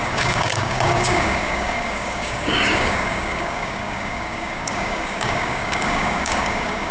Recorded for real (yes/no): no